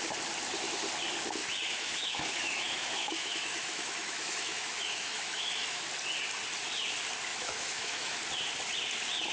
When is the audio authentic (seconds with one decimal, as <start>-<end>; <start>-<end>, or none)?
0.0-1.4; 5.9-7.3; 8.2-9.3